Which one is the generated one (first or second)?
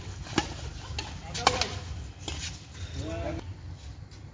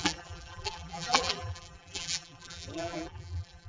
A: second